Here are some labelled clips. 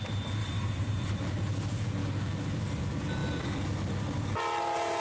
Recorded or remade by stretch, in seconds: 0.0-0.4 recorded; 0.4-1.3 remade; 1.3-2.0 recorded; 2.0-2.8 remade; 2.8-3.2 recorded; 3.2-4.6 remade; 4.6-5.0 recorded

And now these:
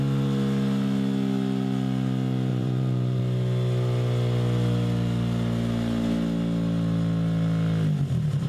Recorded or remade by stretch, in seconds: 0.0-2.5 recorded; 2.5-3.2 remade; 3.2-8.5 recorded

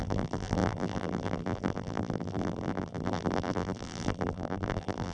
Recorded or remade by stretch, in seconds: 0.0-5.1 remade

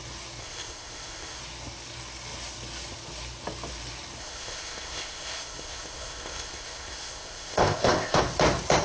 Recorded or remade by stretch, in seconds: 0.0-0.4 recorded; 0.4-1.4 remade; 1.4-4.2 recorded; 4.2-8.2 remade; 8.2-8.8 recorded